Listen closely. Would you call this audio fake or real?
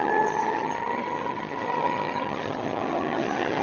fake